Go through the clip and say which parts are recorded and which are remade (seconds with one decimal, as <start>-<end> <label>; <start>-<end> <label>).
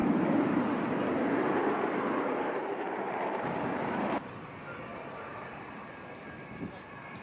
0.0-4.3 remade; 4.3-4.9 recorded; 4.9-5.8 remade; 5.8-7.2 recorded